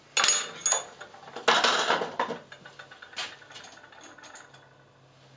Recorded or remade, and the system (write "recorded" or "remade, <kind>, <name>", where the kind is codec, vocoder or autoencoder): recorded